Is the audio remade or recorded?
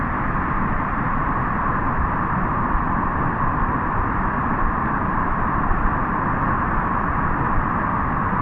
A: remade